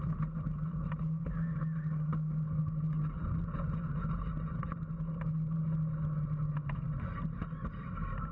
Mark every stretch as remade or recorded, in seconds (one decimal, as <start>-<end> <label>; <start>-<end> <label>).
0.0-8.3 recorded